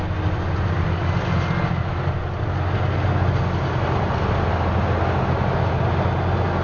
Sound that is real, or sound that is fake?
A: real